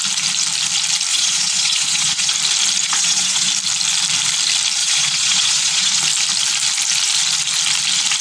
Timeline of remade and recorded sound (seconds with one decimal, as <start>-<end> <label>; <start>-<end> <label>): 0.0-1.1 recorded; 1.1-2.3 remade; 2.3-2.8 recorded; 2.8-3.5 remade; 3.5-4.8 recorded; 4.8-6.0 remade; 6.0-8.2 recorded

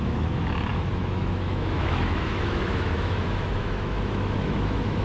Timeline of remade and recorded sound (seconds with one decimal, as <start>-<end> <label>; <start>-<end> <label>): 0.0-5.0 remade

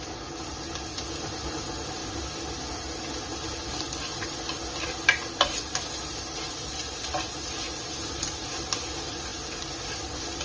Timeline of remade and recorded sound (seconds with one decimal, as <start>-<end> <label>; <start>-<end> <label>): 0.0-10.4 recorded

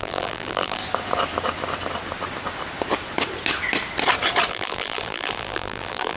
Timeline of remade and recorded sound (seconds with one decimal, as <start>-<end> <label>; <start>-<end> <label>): 0.0-0.8 remade; 0.8-4.5 recorded; 4.5-6.2 remade